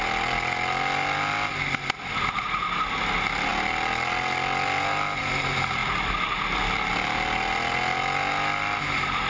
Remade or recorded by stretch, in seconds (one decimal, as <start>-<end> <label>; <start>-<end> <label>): 0.0-9.3 recorded